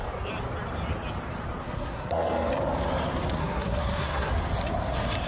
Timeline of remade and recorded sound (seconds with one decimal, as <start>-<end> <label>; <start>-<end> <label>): 0.0-1.6 recorded; 1.6-2.5 remade; 2.5-3.4 recorded; 3.4-4.3 remade; 4.3-5.3 recorded